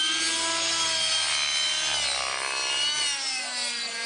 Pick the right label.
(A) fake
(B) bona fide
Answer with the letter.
B